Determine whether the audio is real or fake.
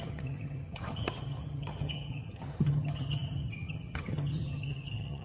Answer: fake